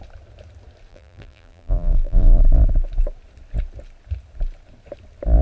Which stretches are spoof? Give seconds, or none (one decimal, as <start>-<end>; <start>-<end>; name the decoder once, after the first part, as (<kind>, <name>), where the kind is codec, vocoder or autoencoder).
0.9-2.4 (vocoder, BigVGAN v2)